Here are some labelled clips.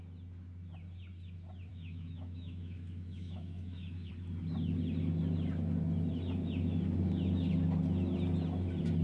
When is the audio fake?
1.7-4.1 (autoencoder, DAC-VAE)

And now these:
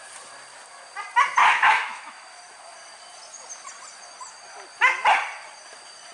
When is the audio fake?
1.4-2.4 (autoencoder, DAC-VAE)

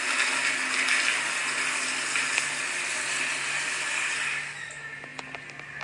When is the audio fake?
none